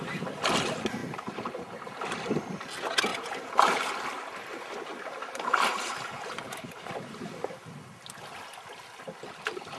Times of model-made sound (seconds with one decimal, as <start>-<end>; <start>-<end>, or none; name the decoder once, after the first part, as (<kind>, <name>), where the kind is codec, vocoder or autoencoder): 1.0-1.6 (vocoder, BigVGAN v2); 3.1-3.9; 4.9-6.9